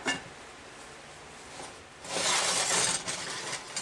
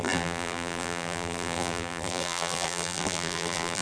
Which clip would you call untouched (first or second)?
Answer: first